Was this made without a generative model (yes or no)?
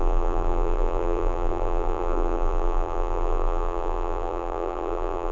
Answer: no